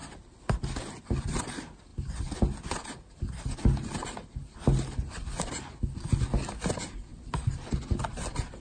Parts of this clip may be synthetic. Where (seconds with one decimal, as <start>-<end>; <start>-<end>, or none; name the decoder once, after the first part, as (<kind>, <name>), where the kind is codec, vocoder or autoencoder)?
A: none